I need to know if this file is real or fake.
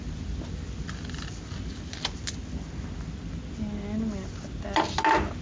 real